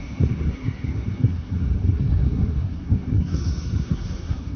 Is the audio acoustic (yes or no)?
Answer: no